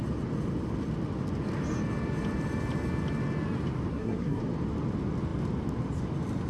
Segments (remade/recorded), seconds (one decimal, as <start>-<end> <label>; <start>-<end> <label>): 0.0-3.9 recorded; 3.9-4.4 remade; 4.4-6.5 recorded